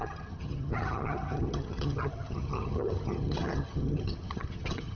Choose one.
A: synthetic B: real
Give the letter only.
A